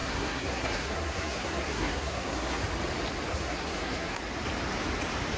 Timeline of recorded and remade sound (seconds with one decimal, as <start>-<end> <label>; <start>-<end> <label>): 0.0-2.6 remade; 2.6-3.3 recorded; 3.3-4.2 remade; 4.2-5.4 recorded